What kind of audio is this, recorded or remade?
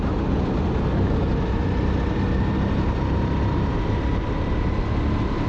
recorded